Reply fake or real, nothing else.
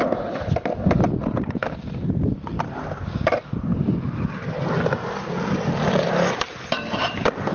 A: fake